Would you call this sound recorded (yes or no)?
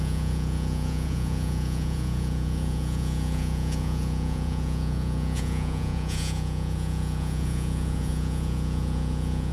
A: no